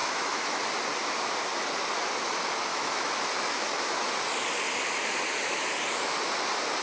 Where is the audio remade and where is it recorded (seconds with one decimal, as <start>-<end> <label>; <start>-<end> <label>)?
0.0-0.6 remade; 0.6-2.7 recorded; 2.7-4.1 remade; 4.1-6.8 recorded